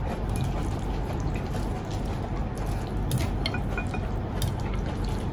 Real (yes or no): yes